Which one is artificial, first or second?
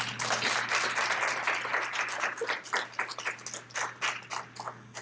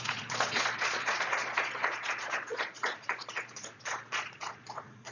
second